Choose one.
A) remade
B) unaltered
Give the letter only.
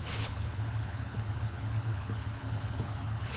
A